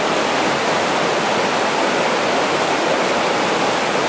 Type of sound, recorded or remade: recorded